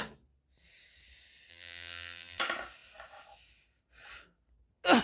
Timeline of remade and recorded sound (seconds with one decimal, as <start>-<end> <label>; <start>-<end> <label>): 0.0-1.5 recorded; 1.5-2.4 remade; 2.4-5.0 recorded